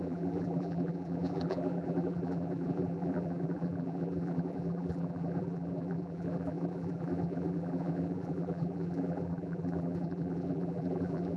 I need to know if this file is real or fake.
fake